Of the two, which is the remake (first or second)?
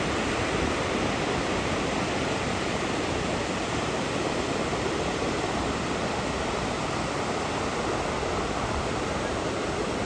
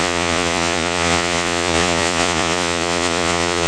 second